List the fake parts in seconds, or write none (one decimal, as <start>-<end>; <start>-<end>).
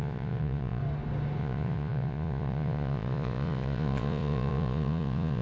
0.0-0.8; 1.4-5.4